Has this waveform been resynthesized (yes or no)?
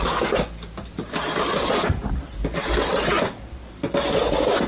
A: no